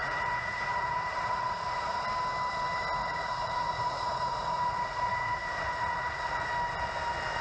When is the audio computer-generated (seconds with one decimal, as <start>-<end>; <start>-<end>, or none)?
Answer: 0.0-2.0; 3.0-6.5